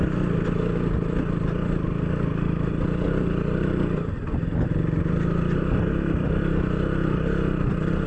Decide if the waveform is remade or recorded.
recorded